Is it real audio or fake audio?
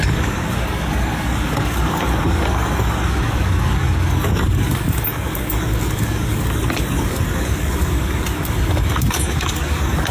fake